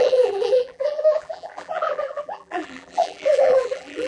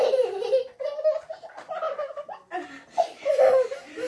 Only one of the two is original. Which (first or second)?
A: second